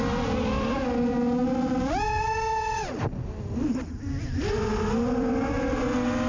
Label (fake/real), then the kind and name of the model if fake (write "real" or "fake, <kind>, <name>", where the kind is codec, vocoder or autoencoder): real